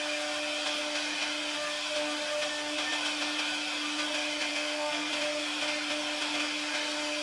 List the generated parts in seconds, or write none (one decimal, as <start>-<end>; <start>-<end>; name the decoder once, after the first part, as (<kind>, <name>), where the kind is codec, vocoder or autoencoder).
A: 4.5-5.1 (codec, SNAC)